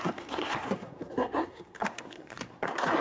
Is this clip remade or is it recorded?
remade